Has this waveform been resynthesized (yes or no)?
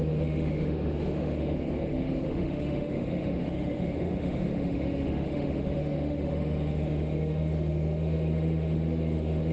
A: yes